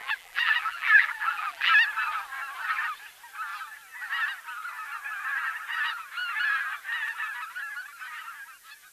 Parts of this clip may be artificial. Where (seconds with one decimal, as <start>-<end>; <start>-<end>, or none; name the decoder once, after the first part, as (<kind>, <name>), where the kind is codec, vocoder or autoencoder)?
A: 0.0-1.7 (vocoder, BigVGAN v2)